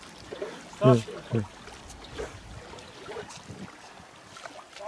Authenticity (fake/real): real